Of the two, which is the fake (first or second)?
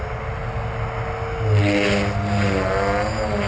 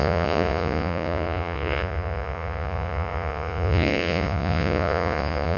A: second